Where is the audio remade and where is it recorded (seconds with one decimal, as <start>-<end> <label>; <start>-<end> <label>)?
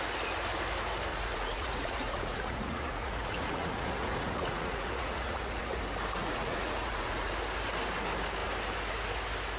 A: 0.0-1.1 recorded; 1.1-5.8 remade; 5.8-6.2 recorded; 6.2-7.3 remade; 7.3-9.6 recorded